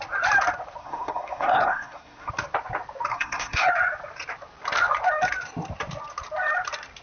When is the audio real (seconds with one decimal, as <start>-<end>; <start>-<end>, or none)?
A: 0.0-0.8; 2.3-3.1; 3.7-7.0